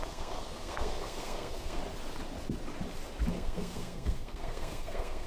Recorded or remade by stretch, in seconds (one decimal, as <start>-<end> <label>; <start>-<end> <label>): 0.0-1.8 remade; 1.8-3.3 recorded; 3.3-5.3 remade